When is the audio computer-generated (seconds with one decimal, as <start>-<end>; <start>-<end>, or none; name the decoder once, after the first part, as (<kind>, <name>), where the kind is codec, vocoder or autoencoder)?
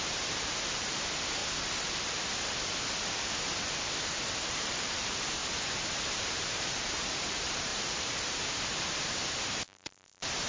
0.0-1.4 (vocoder, BigVGAN v2); 4.5-5.4; 6.2-10.5